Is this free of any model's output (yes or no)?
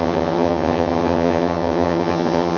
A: no